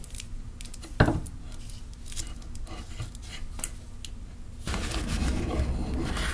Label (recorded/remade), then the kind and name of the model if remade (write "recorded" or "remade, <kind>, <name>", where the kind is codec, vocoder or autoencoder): recorded